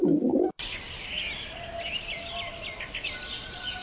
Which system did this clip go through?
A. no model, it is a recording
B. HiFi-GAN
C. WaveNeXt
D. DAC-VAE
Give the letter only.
A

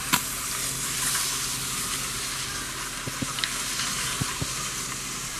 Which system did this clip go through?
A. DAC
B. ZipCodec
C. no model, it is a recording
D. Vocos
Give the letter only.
C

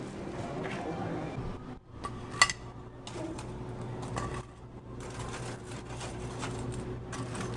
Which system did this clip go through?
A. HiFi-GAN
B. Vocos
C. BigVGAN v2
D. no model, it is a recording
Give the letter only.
D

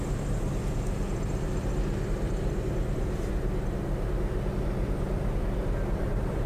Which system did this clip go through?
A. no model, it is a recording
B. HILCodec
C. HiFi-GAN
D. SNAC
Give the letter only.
A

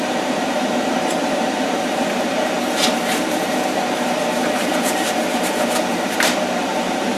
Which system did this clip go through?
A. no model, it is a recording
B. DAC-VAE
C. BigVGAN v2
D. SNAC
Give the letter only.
C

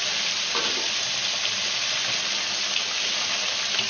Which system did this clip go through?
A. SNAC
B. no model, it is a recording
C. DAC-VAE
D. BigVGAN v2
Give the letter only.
B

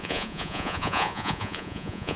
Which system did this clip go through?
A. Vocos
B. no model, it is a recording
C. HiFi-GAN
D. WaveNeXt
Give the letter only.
A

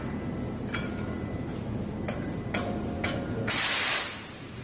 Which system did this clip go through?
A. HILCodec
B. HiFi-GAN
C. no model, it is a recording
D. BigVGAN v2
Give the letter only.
C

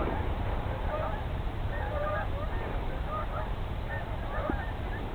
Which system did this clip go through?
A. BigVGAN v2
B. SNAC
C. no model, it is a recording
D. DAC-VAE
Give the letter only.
A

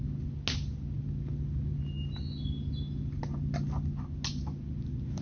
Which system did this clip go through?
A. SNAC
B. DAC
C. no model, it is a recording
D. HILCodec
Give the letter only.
C